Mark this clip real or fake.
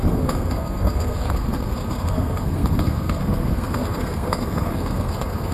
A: fake